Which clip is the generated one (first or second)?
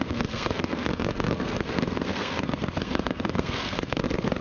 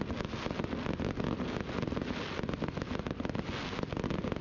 first